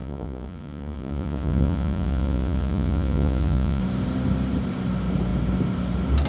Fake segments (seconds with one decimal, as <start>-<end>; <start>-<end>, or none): 0.0-3.8